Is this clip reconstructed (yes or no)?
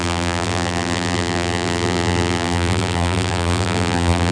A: yes